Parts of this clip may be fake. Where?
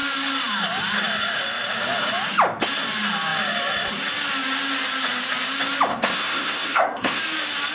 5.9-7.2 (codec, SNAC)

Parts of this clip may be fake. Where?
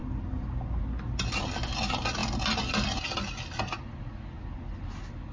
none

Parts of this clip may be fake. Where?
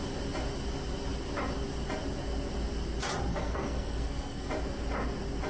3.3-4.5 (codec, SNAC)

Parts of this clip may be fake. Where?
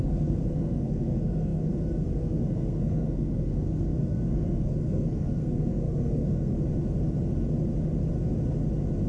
0.0-6.5 (codec, SNAC)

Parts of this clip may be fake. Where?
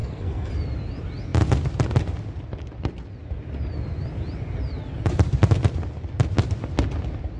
0.0-0.5 (codec, SNAC)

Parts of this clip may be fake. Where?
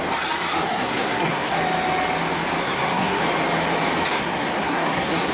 0.7-1.6 (codec, SNAC); 2.6-3.2; 4.1-5.3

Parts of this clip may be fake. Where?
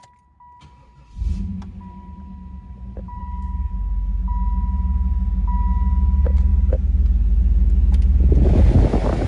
3.2-3.7 (codec, SNAC)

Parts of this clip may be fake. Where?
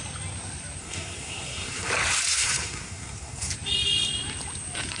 0.8-1.9 (codec, SNAC); 2.3-3.5